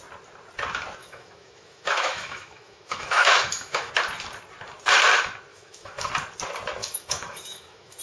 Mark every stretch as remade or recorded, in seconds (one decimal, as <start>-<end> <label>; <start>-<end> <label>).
0.0-1.0 recorded; 1.0-3.9 remade; 3.9-5.5 recorded; 5.5-6.1 remade; 6.1-6.8 recorded; 6.8-8.0 remade